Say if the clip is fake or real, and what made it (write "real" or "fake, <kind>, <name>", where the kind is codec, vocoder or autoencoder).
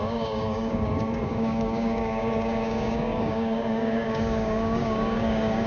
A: fake, codec, DAC